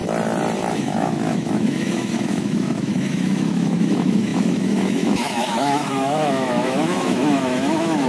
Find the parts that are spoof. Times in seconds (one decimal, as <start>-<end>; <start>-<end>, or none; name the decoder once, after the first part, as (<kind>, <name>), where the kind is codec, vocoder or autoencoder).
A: 0.7-8.1 (autoencoder, DAC-VAE)